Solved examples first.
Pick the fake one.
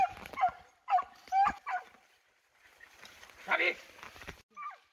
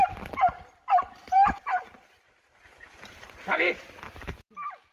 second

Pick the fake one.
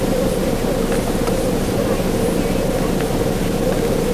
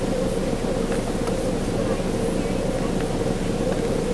first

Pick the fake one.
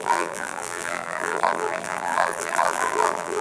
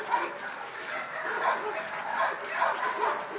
first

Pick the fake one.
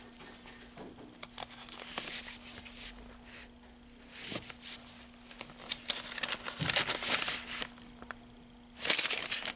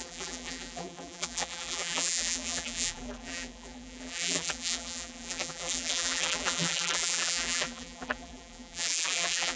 second